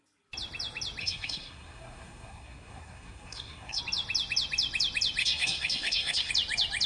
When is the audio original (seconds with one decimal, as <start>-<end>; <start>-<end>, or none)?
0.0-1.0; 3.8-5.2; 6.3-6.9